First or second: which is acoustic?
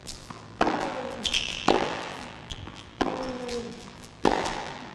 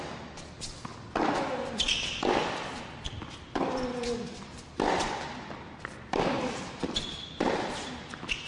second